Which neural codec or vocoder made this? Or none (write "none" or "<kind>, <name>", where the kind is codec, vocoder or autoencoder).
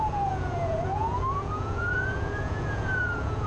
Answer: vocoder, Vocos